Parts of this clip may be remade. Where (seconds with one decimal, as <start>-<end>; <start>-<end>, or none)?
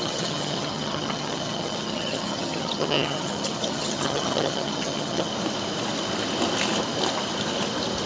0.0-5.3